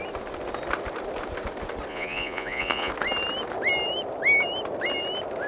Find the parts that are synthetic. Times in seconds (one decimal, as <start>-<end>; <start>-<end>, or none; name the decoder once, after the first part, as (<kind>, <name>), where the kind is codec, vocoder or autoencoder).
1.9-2.9 (vocoder, Vocos)